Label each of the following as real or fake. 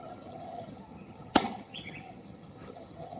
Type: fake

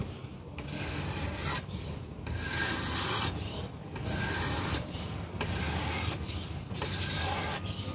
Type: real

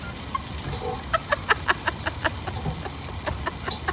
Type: real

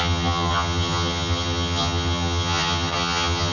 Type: fake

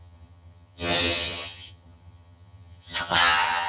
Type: fake